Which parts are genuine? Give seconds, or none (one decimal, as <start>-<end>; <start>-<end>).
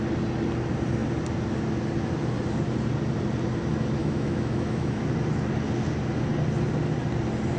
0.0-4.0; 5.0-7.6